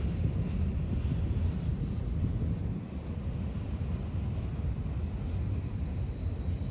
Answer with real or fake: real